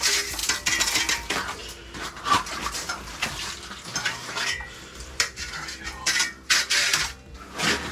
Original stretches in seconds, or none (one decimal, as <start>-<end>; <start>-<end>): 0.0-3.9; 5.5-7.9